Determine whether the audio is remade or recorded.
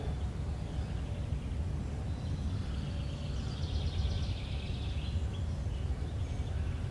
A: recorded